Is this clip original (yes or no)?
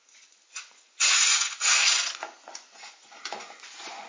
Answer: no